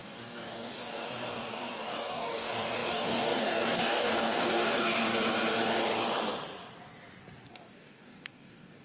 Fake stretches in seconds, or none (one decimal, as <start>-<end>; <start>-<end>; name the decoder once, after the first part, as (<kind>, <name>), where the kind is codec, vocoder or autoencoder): 0.0-5.1 (codec, DAC); 7.5-8.8